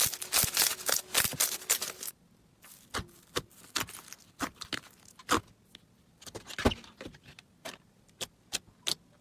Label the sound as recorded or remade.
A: recorded